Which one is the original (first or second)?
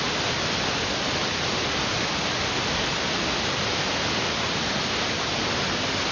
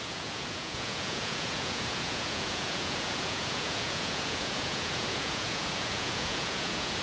first